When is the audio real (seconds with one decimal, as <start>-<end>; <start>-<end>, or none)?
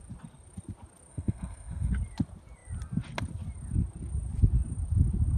0.0-1.1; 1.9-5.4